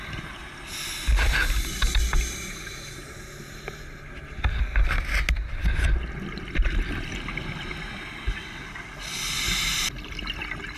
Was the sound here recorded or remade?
recorded